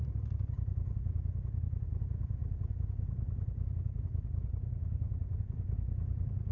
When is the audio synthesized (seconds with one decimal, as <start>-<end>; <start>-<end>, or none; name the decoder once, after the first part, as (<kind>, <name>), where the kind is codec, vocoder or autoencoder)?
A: 0.0-6.5 (vocoder, BigVGAN v2)